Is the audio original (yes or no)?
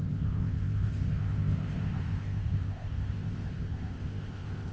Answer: no